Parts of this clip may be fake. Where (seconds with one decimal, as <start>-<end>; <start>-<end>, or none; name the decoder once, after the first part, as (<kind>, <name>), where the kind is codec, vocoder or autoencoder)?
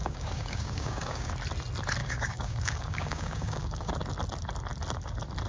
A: 0.0-1.3 (codec, DAC); 2.0-3.9